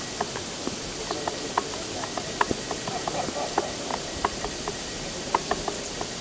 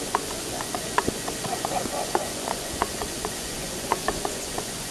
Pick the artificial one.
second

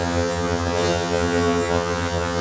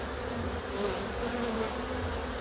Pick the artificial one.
first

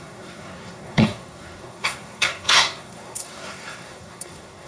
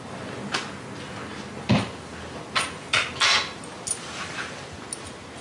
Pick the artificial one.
first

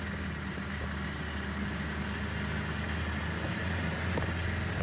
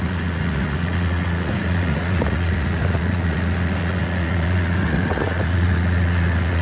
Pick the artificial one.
second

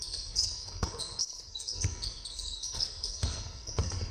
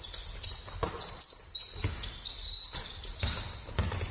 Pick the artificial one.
first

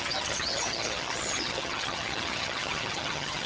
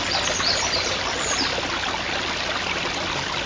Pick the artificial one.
first